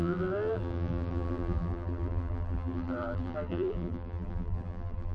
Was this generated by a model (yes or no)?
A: yes